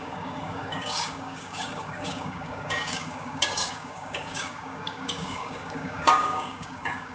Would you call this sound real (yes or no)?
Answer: no